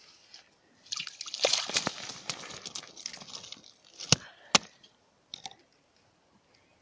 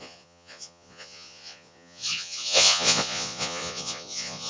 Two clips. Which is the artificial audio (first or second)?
second